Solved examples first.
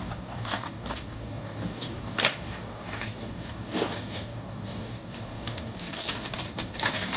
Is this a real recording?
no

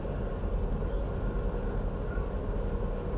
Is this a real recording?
yes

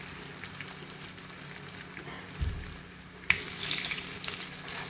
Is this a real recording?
yes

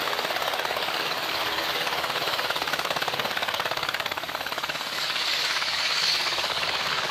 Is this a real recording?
no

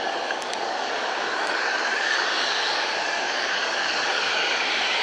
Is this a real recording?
no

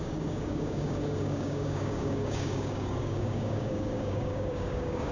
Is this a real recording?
no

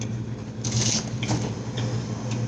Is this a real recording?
yes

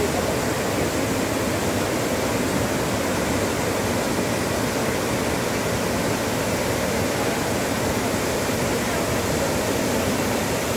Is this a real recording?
yes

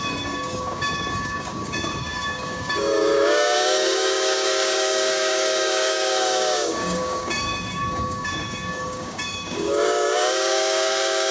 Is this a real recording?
no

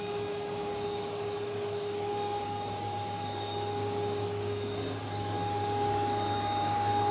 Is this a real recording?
no